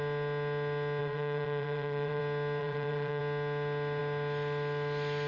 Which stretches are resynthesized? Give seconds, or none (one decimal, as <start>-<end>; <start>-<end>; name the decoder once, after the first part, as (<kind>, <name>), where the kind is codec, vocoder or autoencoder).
1.0-2.2 (vocoder, WaveNeXt); 2.6-3.2